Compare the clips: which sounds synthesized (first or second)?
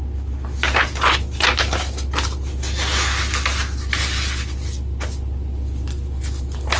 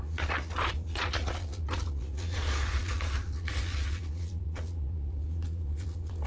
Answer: second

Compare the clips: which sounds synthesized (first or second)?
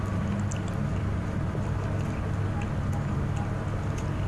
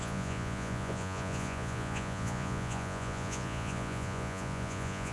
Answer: second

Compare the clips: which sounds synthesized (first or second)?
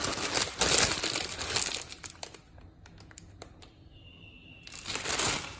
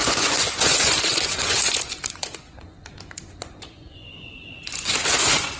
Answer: second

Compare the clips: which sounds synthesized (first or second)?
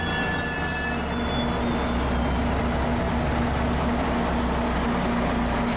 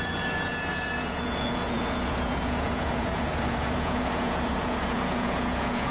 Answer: second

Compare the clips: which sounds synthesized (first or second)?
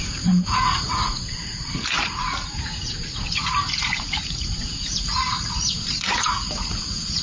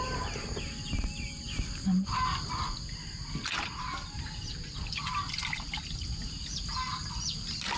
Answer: first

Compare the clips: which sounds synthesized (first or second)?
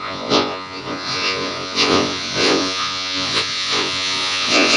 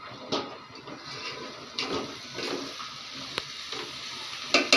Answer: first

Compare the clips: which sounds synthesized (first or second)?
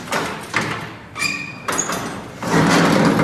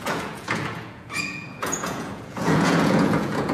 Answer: second